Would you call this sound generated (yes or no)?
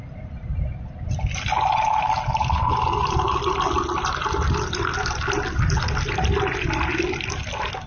no